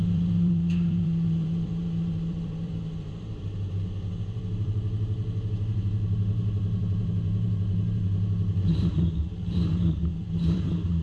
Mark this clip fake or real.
fake